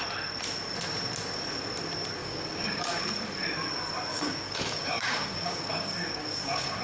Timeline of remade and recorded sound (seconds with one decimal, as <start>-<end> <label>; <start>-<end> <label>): 0.0-2.2 recorded; 2.2-3.0 remade; 3.0-4.1 recorded; 4.1-6.8 remade